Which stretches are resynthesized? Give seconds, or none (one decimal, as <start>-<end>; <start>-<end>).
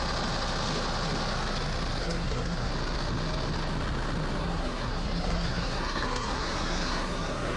2.0-2.7; 4.4-7.6